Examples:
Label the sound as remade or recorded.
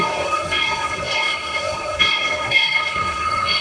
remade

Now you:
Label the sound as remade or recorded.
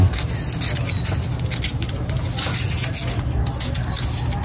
recorded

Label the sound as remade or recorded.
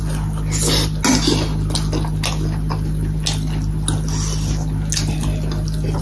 recorded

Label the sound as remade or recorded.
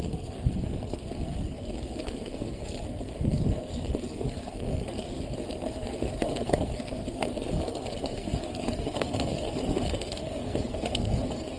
remade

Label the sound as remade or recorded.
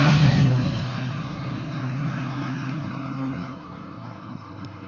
remade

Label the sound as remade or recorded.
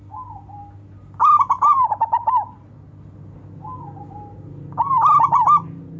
recorded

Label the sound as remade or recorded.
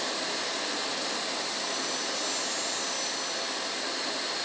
recorded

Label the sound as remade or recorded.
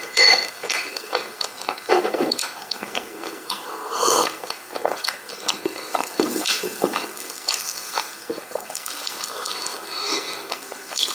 remade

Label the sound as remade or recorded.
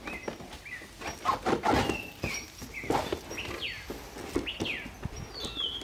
recorded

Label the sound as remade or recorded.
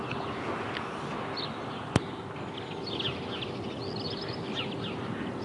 recorded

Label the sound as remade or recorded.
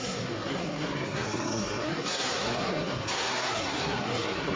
remade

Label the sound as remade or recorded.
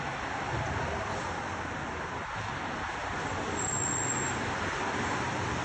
recorded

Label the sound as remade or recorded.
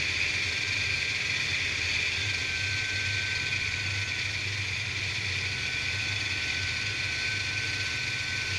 recorded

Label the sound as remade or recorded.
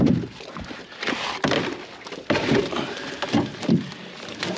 recorded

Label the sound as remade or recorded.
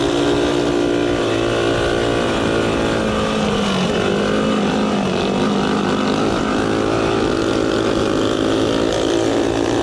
recorded